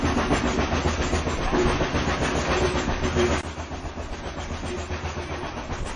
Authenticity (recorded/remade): recorded